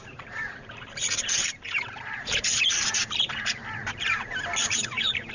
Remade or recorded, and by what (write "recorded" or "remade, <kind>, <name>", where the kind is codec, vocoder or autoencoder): remade, vocoder, BigVGAN v2